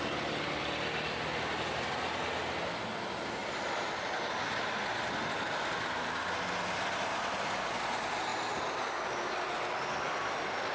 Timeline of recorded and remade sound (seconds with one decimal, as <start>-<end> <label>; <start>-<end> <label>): 0.0-10.7 recorded